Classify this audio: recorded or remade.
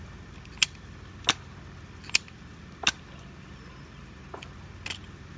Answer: recorded